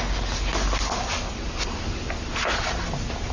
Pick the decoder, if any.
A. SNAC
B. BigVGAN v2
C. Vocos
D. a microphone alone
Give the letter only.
D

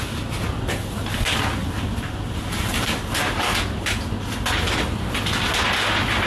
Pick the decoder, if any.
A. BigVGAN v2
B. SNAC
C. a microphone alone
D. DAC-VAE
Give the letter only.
C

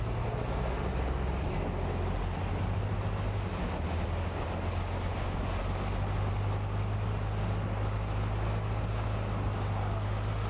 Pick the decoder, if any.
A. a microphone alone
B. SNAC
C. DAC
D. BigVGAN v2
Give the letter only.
A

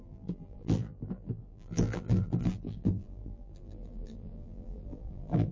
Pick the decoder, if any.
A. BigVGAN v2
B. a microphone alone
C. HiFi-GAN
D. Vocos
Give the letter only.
A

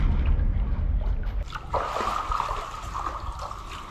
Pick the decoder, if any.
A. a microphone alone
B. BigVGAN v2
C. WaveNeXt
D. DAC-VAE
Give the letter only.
A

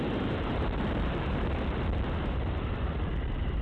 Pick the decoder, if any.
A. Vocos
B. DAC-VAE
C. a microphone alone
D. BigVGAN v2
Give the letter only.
D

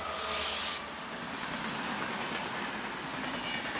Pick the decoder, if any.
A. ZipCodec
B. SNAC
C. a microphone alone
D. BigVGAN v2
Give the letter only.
C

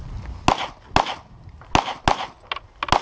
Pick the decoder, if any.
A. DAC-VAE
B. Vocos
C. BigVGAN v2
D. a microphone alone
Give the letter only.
D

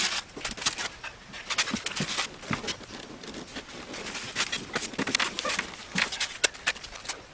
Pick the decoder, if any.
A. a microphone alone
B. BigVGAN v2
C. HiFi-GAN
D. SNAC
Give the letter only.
A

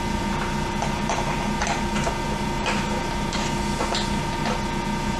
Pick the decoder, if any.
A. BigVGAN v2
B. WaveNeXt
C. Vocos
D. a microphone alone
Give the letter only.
A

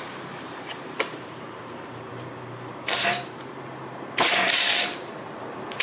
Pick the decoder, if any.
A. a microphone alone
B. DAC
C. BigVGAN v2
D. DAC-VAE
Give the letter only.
C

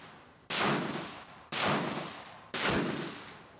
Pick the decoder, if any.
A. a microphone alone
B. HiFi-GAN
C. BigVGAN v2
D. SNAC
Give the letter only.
A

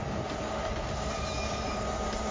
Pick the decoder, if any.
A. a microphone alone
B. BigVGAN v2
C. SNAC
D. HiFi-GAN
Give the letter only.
B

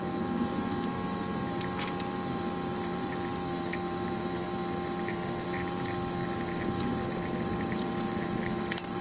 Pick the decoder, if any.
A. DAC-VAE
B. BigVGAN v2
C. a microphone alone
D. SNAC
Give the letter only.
B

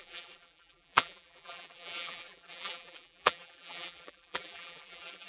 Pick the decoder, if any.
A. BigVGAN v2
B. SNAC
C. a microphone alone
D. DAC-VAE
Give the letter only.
A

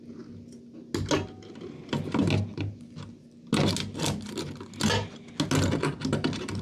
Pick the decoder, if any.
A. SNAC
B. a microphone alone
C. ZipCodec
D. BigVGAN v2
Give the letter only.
B